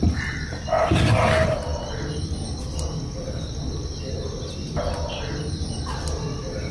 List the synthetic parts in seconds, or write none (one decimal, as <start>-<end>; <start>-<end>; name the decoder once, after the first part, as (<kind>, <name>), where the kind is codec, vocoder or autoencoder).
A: none